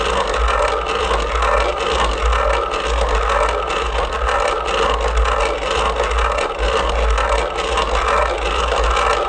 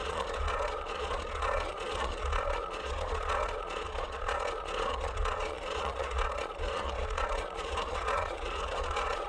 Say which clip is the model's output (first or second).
second